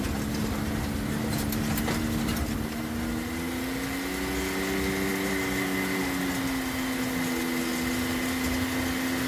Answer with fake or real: real